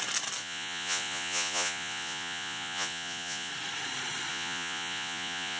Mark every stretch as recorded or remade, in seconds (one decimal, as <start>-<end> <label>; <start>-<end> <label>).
0.0-0.4 recorded; 0.4-3.5 remade; 3.5-4.3 recorded; 4.3-5.6 remade